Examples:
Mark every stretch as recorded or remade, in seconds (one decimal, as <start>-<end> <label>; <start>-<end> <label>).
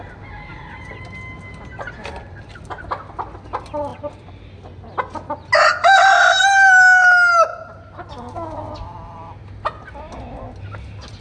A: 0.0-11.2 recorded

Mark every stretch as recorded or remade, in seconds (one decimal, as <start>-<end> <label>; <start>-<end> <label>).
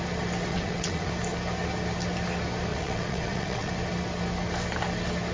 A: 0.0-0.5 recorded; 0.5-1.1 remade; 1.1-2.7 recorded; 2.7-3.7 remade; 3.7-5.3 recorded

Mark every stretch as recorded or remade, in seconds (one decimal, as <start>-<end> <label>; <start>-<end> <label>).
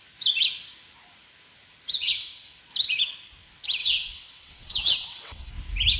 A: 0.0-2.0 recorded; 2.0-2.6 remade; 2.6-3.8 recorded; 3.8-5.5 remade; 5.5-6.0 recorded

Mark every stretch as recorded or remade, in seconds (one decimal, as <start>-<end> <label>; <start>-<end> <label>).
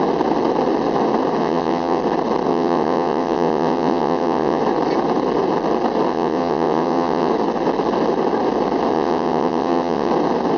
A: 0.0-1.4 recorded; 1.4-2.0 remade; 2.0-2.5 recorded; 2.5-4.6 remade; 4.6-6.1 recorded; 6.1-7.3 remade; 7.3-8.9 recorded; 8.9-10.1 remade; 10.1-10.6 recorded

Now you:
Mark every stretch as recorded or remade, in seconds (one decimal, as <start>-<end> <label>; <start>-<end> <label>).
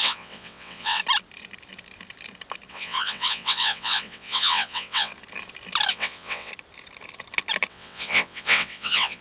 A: 0.0-1.0 remade; 1.0-2.7 recorded; 2.7-5.1 remade; 5.1-5.9 recorded; 5.9-6.5 remade; 6.5-7.7 recorded; 7.7-9.2 remade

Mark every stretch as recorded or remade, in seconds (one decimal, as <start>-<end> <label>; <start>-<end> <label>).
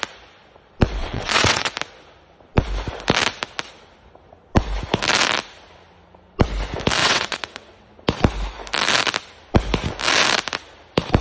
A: 0.0-1.0 recorded; 1.0-1.7 remade; 1.7-7.0 recorded; 7.0-7.9 remade; 7.9-11.2 recorded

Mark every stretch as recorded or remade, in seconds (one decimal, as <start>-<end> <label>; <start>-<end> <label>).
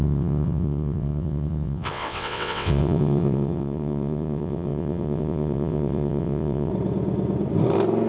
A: 0.0-6.7 remade; 6.7-8.1 recorded